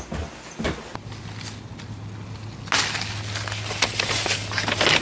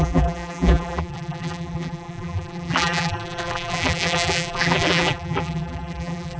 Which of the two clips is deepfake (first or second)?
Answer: second